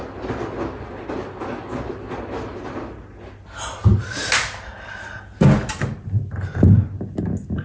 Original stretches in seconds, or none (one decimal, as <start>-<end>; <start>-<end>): 0.0-7.6